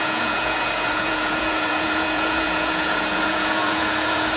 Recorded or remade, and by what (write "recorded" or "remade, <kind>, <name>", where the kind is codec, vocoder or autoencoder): remade, vocoder, Vocos